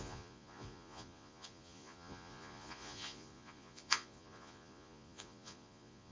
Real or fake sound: fake